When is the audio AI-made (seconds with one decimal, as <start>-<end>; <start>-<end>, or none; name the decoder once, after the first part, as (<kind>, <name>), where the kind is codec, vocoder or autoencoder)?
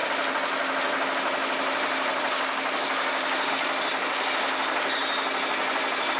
none